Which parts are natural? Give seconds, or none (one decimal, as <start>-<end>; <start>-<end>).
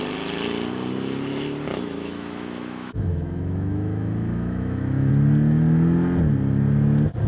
0.0-1.7; 5.1-7.3